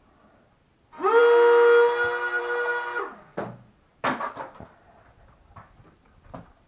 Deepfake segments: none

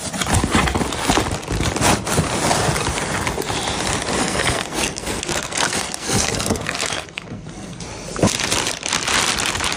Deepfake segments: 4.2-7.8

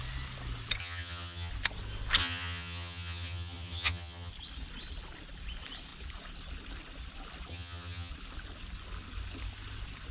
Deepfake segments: 0.8-1.5; 2.2-4.3; 7.5-8.1

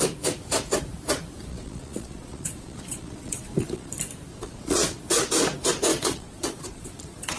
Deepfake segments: 1.5-3.9; 4.3-5.0; 5.9-7.4